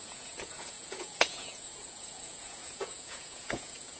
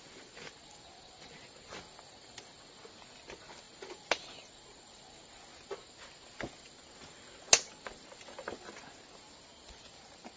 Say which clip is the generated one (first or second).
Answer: first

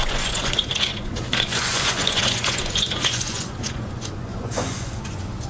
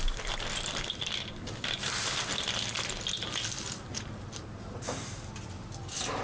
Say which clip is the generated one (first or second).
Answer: first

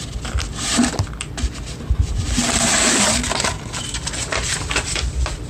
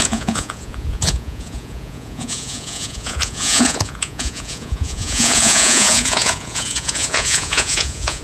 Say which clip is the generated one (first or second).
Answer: second